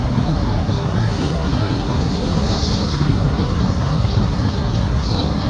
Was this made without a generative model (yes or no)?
no